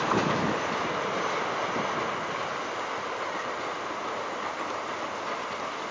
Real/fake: real